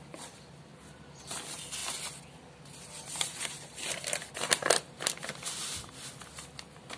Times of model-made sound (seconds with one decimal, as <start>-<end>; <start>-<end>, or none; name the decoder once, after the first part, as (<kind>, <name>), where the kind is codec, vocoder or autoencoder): none